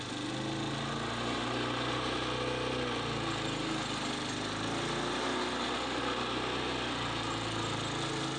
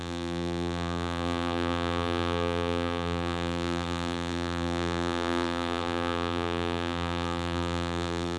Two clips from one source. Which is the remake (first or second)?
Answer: second